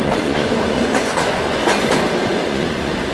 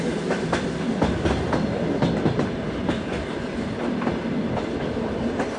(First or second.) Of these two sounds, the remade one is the first